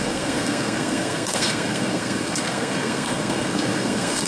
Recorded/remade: remade